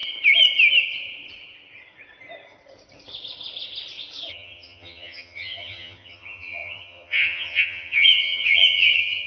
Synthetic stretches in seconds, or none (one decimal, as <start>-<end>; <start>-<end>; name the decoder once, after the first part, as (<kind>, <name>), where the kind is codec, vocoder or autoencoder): 4.3-9.3 (vocoder, HiFi-GAN)